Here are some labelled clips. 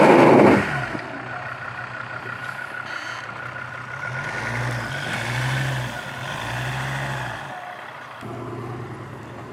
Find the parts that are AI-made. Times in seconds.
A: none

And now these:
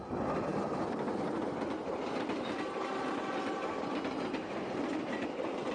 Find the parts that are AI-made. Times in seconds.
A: none

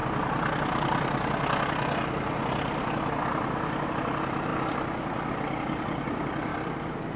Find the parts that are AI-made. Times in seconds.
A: 3.9-4.5; 5.3-6.5

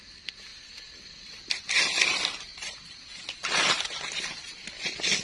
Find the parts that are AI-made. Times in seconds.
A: 0.5-1.4; 2.5-3.8

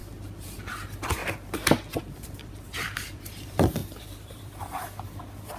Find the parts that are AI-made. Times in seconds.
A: 0.6-1.2; 2.2-5.6

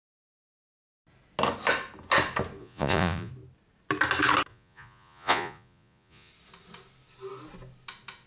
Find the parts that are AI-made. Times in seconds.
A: 2.6-3.3; 4.5-6.3

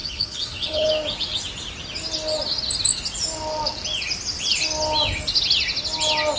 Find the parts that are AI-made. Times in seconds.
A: 0.0-0.9

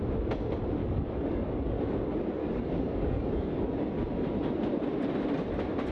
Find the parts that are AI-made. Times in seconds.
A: 0.8-2.0; 2.4-3.6